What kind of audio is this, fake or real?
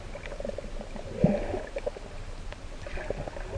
real